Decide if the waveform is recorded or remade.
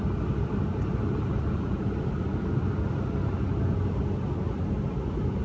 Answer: recorded